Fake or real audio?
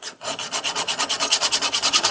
fake